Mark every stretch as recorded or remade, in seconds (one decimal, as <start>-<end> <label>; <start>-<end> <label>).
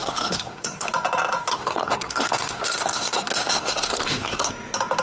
0.0-0.9 remade; 0.9-1.5 recorded; 1.5-4.5 remade; 4.5-5.0 recorded